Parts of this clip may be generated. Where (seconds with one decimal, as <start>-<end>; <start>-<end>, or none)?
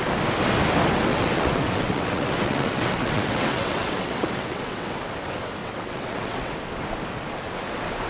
1.1-5.0; 5.6-6.5